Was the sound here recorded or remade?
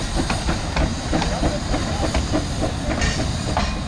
recorded